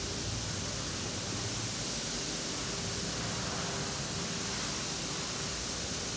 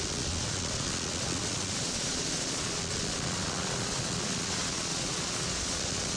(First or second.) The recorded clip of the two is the first